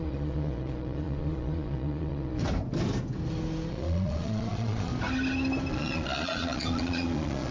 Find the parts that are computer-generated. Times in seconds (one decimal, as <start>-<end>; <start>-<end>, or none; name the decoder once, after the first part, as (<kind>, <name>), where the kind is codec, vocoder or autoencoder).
0.0-2.4 (vocoder, Vocos); 3.7-4.9; 5.7-7.5